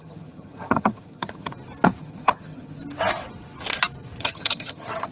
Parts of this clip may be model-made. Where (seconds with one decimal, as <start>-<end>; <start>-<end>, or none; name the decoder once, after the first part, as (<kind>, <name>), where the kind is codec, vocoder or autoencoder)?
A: 0.0-1.5 (vocoder, HiFi-GAN); 2.0-2.8; 4.2-5.1